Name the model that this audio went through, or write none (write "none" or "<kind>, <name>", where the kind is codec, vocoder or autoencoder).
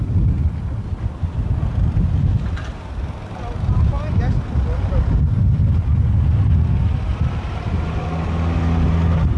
none